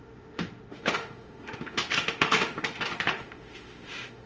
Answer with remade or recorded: remade